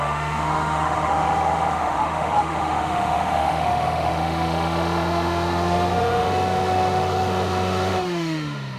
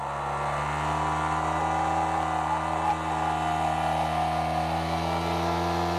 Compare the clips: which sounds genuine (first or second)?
second